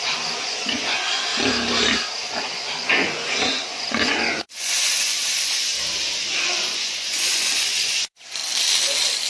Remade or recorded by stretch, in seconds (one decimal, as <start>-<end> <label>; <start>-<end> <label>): 0.0-1.3 remade; 1.3-2.2 recorded; 2.2-5.7 remade; 5.7-6.3 recorded; 6.3-8.4 remade; 8.4-9.3 recorded